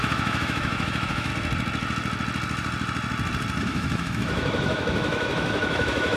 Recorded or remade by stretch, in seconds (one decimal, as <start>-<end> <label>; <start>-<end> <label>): 0.0-1.3 remade; 1.3-3.6 recorded; 3.6-6.2 remade